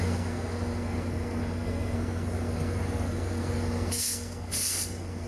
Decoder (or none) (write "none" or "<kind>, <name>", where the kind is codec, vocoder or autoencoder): codec, SNAC